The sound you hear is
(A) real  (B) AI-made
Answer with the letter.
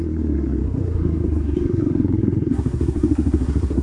B